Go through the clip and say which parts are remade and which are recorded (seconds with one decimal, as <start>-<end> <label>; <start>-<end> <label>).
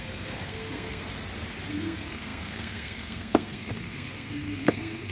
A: 0.0-1.0 remade; 1.0-1.7 recorded; 1.7-5.1 remade